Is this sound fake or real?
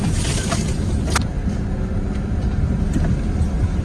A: real